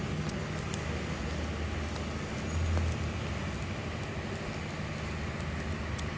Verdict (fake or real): real